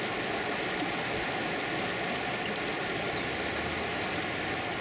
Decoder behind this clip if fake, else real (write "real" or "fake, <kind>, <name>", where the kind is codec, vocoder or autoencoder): real